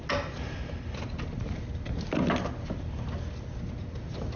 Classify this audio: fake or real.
real